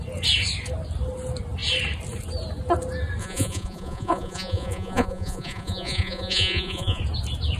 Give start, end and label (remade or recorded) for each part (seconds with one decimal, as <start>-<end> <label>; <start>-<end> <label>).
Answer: 0.0-3.2 recorded; 3.2-7.0 remade; 7.0-7.6 recorded